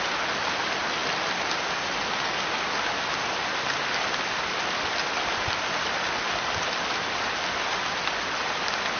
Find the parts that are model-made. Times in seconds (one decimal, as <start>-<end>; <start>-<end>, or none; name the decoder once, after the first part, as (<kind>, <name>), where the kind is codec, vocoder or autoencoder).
none